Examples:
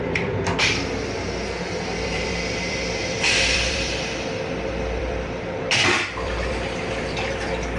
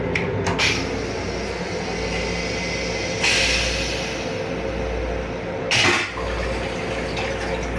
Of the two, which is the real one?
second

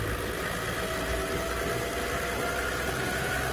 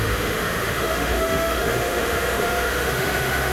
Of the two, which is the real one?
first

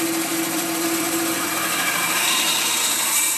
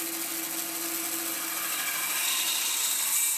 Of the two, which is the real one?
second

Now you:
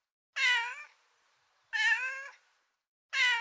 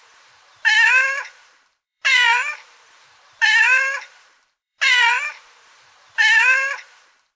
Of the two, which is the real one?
first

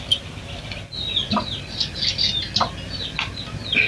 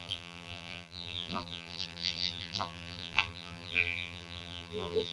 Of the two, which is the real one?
first